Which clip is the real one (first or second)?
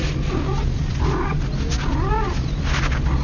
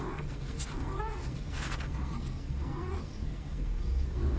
first